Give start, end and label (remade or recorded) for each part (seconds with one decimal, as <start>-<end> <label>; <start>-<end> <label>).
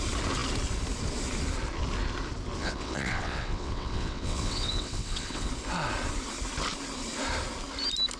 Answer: 0.0-2.6 recorded; 2.6-5.5 remade; 5.5-8.2 recorded